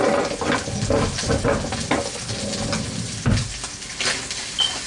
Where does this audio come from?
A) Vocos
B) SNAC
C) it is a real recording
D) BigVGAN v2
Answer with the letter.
C